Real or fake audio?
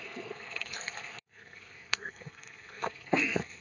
fake